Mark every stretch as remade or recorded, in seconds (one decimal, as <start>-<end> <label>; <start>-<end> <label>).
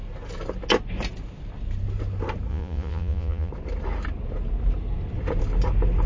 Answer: 0.0-2.5 recorded; 2.5-3.5 remade; 3.5-6.1 recorded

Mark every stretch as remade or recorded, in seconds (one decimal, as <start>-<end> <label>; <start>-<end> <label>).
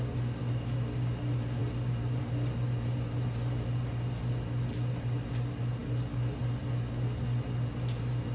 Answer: 0.0-8.3 recorded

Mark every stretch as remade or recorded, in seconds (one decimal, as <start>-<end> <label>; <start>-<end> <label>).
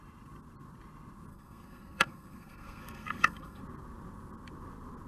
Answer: 0.0-1.3 recorded; 1.3-3.6 remade; 3.6-5.1 recorded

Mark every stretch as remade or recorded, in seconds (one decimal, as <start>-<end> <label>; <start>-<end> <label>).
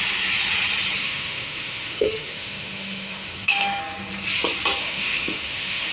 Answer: 0.0-1.0 recorded; 1.0-3.8 remade; 3.8-4.8 recorded; 4.8-5.9 remade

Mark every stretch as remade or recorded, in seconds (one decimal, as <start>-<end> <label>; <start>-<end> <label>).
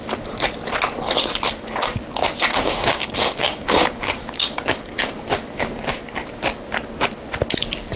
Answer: 0.0-2.5 recorded; 2.5-5.7 remade; 5.7-8.0 recorded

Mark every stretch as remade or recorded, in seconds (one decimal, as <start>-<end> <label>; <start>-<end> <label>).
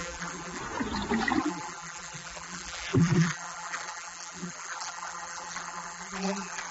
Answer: 0.0-0.6 remade; 0.6-1.4 recorded; 1.4-6.7 remade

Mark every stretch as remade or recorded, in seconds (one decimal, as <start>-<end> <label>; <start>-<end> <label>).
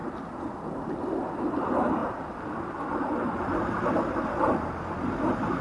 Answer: 0.0-2.0 recorded; 2.0-5.6 remade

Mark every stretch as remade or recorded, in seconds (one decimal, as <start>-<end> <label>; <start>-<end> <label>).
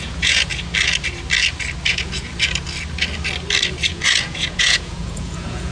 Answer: 0.0-0.5 remade; 0.5-1.9 recorded; 1.9-2.3 remade; 2.3-3.9 recorded; 3.9-5.7 remade